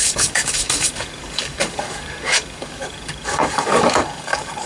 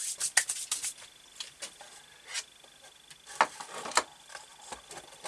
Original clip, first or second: second